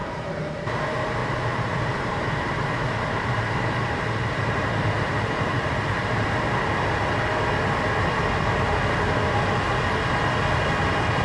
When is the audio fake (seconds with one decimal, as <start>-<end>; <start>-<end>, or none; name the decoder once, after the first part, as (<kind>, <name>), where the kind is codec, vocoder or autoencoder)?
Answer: 0.0-0.7 (vocoder, BigVGAN v2); 1.2-5.4